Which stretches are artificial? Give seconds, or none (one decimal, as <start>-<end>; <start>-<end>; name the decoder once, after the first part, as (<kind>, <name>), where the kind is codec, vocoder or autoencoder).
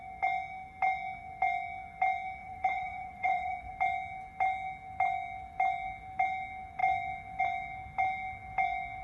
2.4-3.7 (vocoder, Vocos)